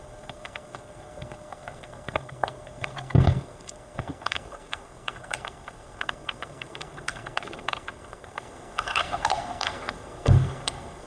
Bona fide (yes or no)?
no